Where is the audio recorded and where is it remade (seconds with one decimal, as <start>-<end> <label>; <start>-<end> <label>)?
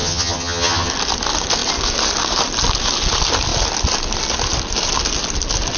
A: 0.0-0.9 remade; 0.9-5.8 recorded